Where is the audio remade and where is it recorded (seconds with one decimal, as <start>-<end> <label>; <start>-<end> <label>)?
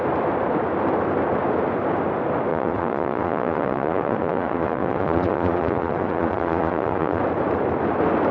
0.0-2.5 recorded; 2.5-7.2 remade; 7.2-8.3 recorded